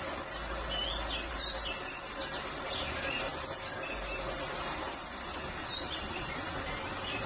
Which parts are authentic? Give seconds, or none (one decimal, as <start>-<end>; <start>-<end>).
0.0-7.3